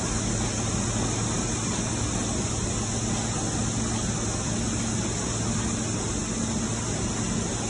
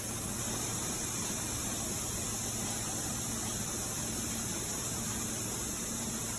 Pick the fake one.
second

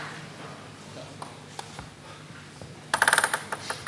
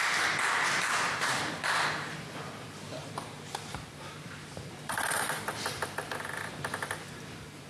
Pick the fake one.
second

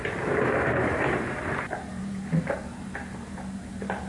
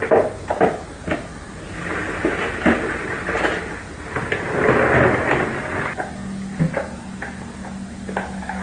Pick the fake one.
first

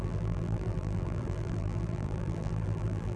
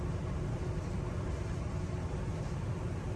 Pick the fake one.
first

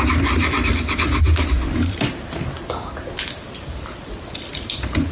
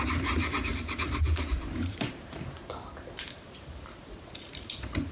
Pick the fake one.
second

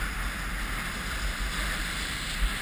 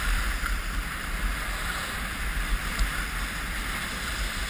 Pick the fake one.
second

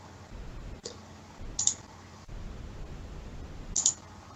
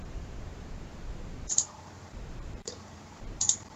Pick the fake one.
second